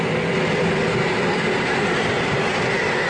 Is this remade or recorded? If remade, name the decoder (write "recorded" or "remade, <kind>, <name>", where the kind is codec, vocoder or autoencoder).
recorded